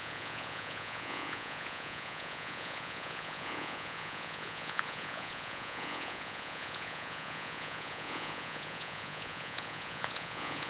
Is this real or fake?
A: fake